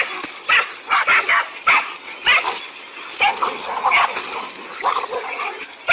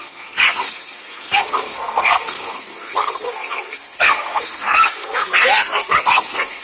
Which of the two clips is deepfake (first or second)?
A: second